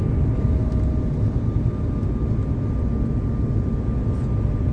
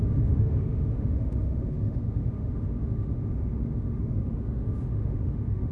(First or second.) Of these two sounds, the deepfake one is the second